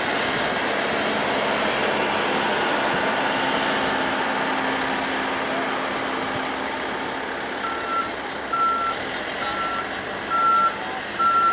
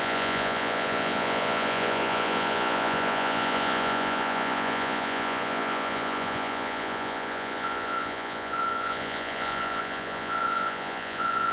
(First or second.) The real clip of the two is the first